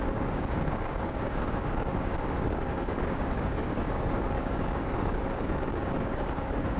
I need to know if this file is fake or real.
fake